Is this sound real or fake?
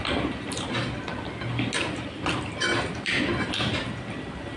real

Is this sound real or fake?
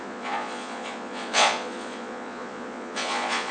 fake